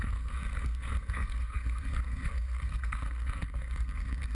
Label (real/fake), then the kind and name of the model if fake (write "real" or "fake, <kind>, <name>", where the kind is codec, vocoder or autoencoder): fake, codec, SNAC